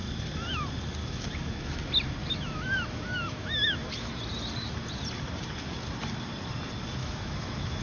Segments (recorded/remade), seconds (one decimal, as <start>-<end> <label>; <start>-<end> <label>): 0.0-1.0 recorded; 1.0-1.8 remade; 1.8-2.2 recorded; 2.2-4.2 remade; 4.2-7.0 recorded; 7.0-7.8 remade